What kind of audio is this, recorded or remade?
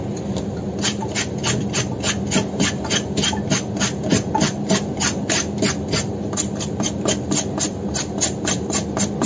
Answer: recorded